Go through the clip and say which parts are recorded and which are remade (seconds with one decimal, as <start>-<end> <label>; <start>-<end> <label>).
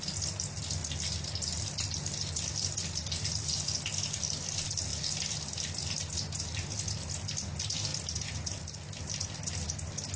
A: 0.0-10.2 recorded